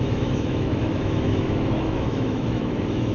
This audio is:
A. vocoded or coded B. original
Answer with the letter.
A